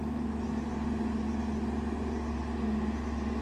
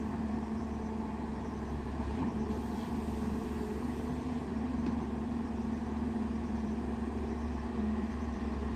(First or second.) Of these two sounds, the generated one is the second